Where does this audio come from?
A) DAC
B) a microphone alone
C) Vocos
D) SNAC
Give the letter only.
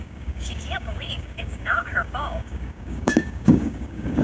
A